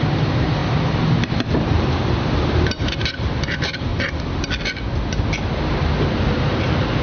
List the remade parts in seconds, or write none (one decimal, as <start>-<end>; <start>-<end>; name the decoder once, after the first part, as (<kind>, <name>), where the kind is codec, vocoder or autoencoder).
0.0-3.9 (vocoder, BigVGAN v2); 5.5-7.0